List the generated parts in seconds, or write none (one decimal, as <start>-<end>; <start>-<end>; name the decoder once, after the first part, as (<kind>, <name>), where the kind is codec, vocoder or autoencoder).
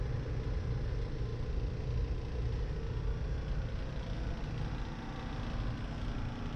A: none